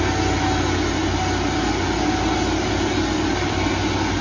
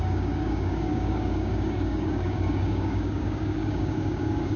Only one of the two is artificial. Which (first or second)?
second